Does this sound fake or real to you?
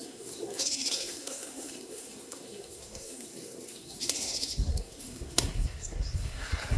fake